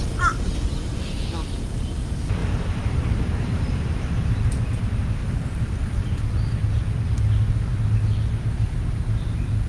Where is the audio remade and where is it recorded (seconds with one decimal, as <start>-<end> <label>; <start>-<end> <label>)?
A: 0.0-2.4 recorded; 2.4-4.3 remade; 4.3-5.2 recorded; 5.2-6.3 remade; 6.3-9.7 recorded